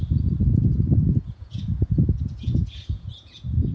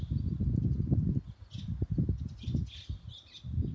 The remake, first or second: first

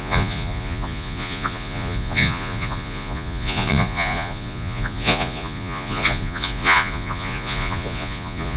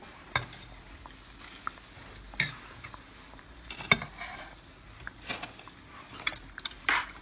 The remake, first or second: first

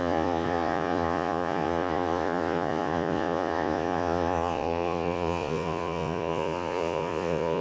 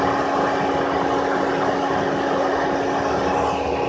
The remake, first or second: first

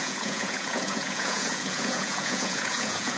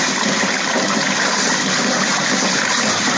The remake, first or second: first